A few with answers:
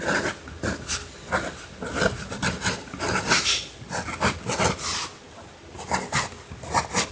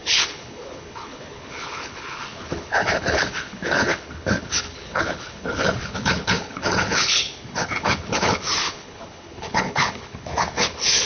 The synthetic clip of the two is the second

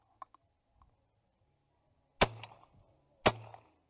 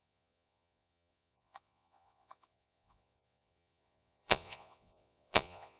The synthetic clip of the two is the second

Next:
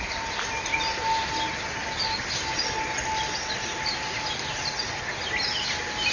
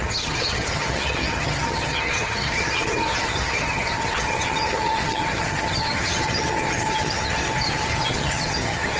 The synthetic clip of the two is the second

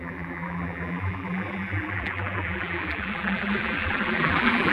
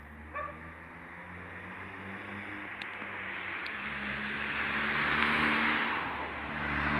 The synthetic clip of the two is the first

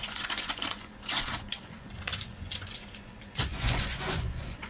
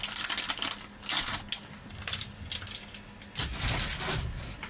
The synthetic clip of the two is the first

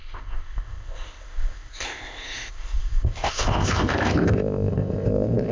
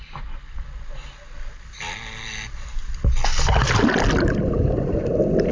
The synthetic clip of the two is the first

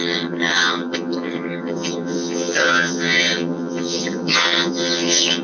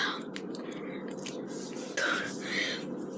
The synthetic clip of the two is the first